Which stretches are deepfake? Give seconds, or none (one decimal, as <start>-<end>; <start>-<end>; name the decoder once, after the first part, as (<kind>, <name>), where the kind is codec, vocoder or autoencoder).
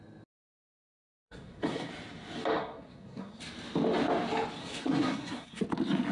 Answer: 0.4-1.9 (codec, SNAC); 2.6-3.4; 4.6-5.6